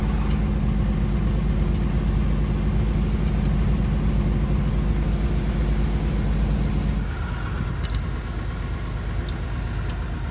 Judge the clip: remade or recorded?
recorded